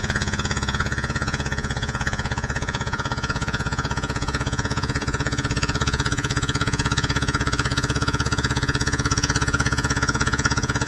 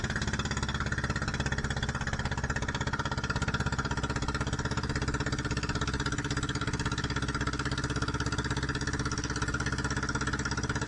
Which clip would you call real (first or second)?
second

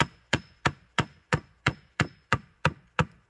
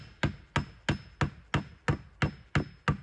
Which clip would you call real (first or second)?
second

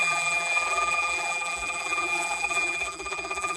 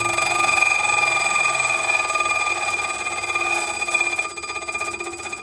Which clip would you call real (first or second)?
second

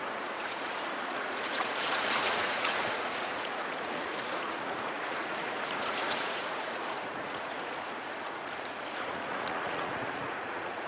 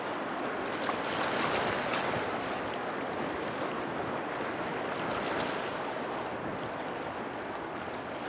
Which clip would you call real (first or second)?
second